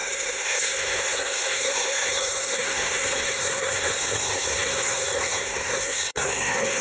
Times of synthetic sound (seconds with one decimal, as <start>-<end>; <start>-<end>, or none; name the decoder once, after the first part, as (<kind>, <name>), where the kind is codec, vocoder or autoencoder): 0.0-6.8 (codec, SNAC)